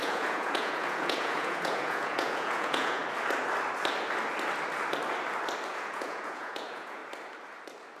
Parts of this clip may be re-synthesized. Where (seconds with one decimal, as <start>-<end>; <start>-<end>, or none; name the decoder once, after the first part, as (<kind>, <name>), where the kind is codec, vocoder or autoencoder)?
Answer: 0.0-3.0 (vocoder, Vocos); 5.7-7.0